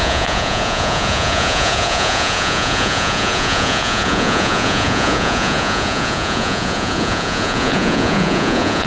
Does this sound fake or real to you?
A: fake